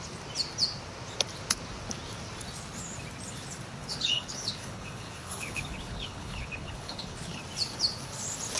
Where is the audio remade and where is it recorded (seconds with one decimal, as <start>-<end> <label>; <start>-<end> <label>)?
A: 0.0-3.8 recorded; 3.8-7.4 remade; 7.4-8.6 recorded